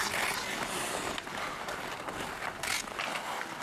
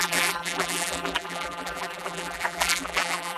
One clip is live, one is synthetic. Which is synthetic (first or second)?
second